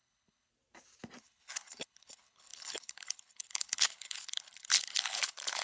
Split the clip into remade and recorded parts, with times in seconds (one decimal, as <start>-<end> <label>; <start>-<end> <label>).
0.0-0.5 remade; 0.5-1.2 recorded; 1.2-5.6 remade